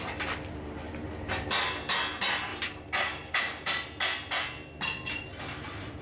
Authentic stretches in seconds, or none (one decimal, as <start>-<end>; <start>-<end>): 0.0-6.0